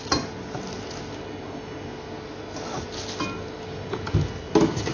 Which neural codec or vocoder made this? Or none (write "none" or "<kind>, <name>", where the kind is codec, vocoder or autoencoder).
none